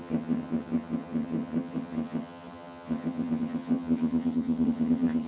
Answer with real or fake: fake